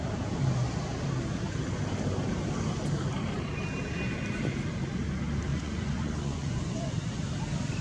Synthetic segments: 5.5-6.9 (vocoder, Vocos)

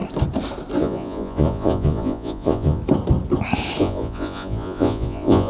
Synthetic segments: 0.8-2.8 (vocoder, Vocos); 3.8-5.5